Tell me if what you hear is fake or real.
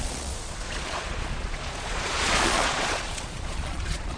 fake